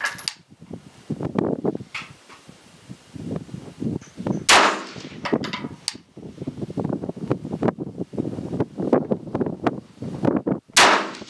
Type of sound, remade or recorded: recorded